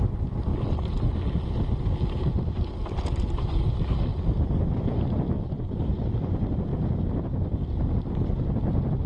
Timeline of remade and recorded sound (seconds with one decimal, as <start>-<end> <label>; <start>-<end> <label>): 0.0-0.5 remade; 0.5-3.3 recorded; 3.3-4.1 remade; 4.1-4.7 recorded; 4.7-6.7 remade; 6.7-8.1 recorded; 8.1-9.1 remade